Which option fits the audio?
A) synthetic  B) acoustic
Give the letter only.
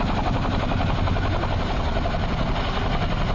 B